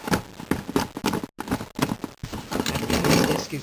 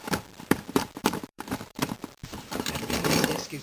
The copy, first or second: second